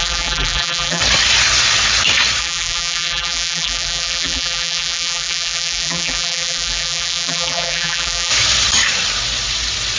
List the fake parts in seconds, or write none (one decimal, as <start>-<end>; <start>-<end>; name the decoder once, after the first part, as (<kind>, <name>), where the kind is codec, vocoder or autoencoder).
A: 0.0-1.0 (vocoder, BigVGAN v2); 2.4-8.3